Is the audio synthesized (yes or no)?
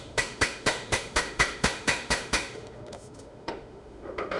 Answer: yes